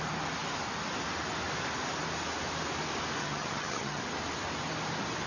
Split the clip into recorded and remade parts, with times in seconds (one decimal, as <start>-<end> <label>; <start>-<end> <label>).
0.0-3.2 recorded; 3.2-4.0 remade; 4.0-5.3 recorded